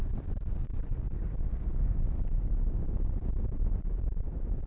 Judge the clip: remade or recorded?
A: recorded